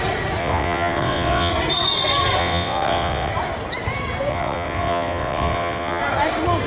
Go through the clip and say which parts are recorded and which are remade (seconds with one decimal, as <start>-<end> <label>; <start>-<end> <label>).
0.0-0.4 recorded; 0.4-1.5 remade; 1.5-2.4 recorded; 2.4-3.3 remade; 3.3-4.3 recorded; 4.3-6.0 remade; 6.0-6.7 recorded